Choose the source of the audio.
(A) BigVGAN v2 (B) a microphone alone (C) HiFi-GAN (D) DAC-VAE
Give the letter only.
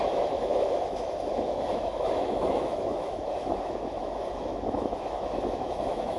D